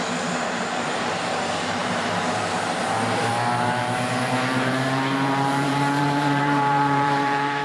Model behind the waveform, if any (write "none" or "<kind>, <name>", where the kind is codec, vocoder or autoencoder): vocoder, BigVGAN v2